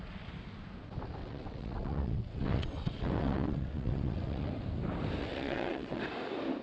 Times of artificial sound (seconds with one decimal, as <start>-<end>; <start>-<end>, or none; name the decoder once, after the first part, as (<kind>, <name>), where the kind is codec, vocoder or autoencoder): 1.2-4.5 (vocoder, WaveNeXt); 5.2-6.0